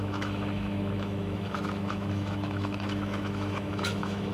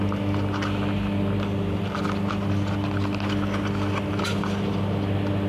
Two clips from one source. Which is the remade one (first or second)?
first